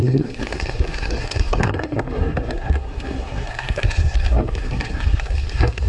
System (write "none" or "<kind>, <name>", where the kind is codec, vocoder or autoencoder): codec, SNAC